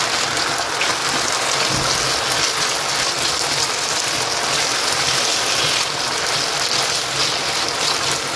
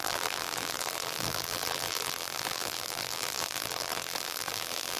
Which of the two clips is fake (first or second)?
second